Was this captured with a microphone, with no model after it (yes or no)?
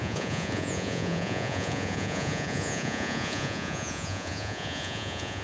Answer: no